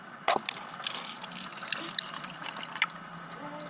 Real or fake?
real